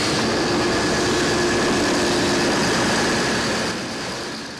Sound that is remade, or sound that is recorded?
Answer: recorded